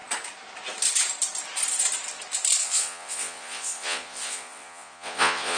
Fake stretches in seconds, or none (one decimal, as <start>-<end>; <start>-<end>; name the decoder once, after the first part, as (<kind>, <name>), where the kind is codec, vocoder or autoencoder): 2.6-5.6 (vocoder, Vocos)